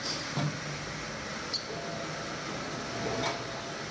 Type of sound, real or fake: real